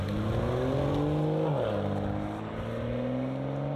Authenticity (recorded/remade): recorded